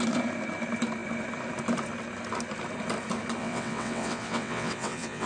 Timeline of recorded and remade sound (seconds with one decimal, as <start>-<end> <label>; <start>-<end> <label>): 0.0-3.4 recorded; 3.4-5.3 remade